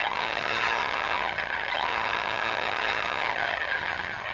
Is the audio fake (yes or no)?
yes